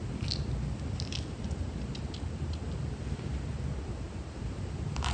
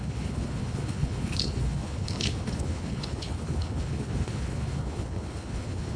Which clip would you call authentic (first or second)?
first